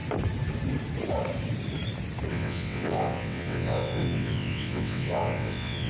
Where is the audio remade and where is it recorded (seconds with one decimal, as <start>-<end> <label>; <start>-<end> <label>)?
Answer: 0.0-2.3 recorded; 2.3-5.9 remade